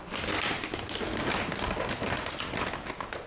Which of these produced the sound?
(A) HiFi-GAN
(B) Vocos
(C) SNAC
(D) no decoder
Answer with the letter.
D